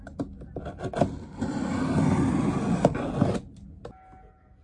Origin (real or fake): real